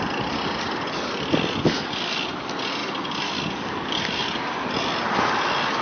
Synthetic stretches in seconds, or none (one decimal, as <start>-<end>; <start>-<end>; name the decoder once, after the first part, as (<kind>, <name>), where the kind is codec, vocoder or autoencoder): 0.0-5.8 (vocoder, BigVGAN v2)